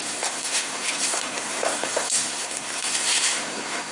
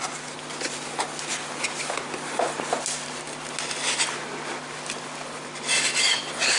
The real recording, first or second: second